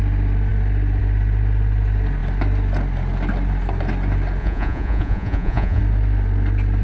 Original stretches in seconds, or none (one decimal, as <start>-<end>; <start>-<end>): 0.0-4.4; 5.8-6.8